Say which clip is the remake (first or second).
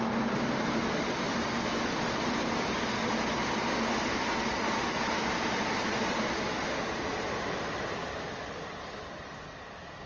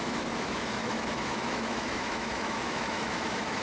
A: second